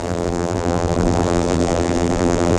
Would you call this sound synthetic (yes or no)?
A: yes